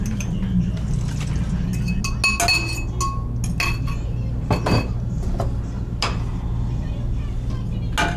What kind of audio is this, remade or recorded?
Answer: recorded